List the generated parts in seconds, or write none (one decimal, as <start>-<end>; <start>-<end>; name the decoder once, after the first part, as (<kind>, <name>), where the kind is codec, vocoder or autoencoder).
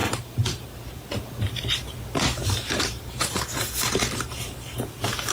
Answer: 0.0-1.1 (vocoder, BigVGAN v2); 2.4-4.4